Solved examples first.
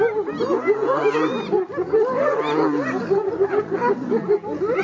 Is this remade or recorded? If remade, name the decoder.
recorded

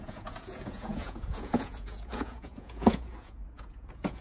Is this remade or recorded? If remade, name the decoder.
remade, vocoder, Vocos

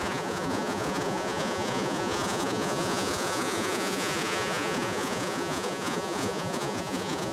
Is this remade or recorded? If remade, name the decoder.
remade, vocoder, Vocos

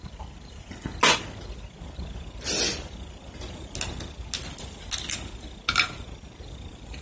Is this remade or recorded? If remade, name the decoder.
recorded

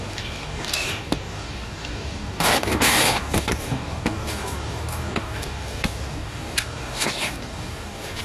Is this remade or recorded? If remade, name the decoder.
remade, codec, DAC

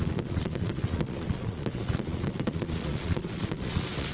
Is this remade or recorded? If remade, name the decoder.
remade, vocoder, Vocos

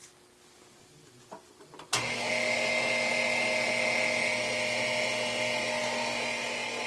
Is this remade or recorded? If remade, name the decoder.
recorded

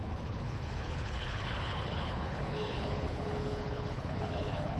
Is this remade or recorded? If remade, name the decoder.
remade, codec, HILCodec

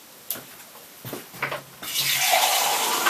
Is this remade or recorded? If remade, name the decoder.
recorded